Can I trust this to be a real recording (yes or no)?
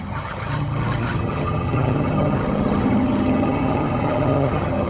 no